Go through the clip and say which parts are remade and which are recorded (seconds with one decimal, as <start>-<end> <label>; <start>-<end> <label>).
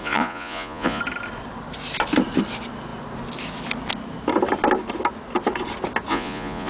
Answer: 0.0-1.0 remade; 1.0-6.1 recorded; 6.1-6.7 remade